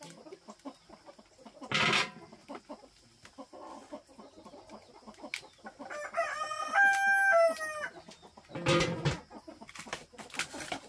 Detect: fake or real real